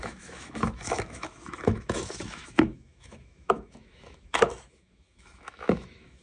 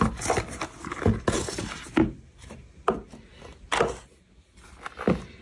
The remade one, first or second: first